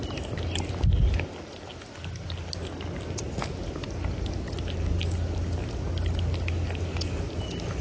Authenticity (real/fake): real